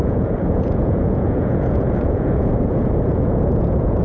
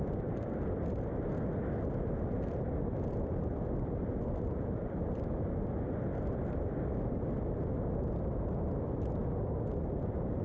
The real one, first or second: second